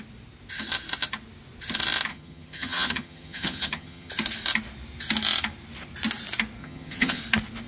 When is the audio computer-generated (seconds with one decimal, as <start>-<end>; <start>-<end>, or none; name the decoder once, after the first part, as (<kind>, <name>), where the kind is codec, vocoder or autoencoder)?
2.1-4.1 (vocoder, HiFi-GAN); 6.6-7.2